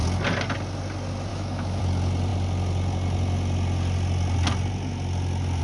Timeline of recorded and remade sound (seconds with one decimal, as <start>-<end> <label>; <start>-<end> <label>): 0.0-1.3 recorded; 1.3-1.8 remade; 1.8-5.6 recorded